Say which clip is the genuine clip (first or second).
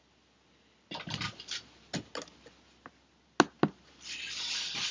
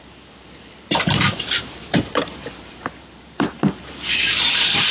first